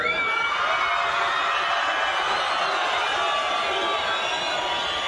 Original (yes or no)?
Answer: yes